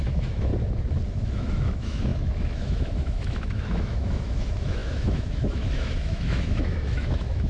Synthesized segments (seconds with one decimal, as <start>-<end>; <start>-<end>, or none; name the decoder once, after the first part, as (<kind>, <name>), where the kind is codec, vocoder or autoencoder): 0.0-0.5 (autoencoder, DAC-VAE); 1.1-7.5